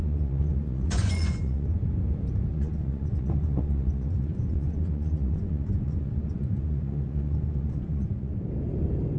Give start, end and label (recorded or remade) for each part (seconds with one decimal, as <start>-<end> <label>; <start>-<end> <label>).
0.0-1.8 remade; 1.8-2.5 recorded; 2.5-8.3 remade; 8.3-9.2 recorded